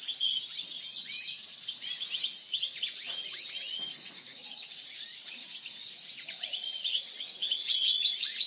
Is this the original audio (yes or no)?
no